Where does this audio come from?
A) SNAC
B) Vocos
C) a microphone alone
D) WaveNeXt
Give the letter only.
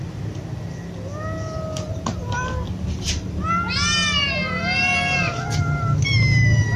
C